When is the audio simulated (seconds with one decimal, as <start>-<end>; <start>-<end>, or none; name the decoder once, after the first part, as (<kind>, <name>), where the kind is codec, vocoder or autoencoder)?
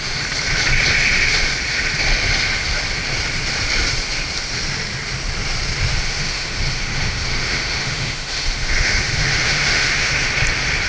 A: 5.9-10.3 (autoencoder, DAC-VAE)